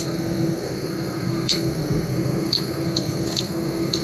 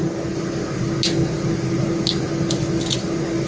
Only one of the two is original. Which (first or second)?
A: second